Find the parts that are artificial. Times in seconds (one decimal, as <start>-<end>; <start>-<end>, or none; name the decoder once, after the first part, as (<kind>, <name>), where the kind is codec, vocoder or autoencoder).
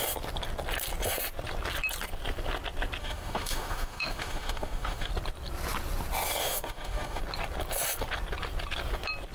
3.0-5.1 (autoencoder, DAC-VAE); 6.4-7.2